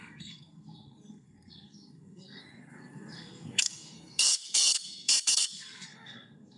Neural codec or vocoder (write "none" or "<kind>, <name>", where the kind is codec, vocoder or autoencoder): codec, SNAC